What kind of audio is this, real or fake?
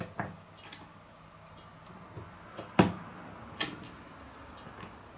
real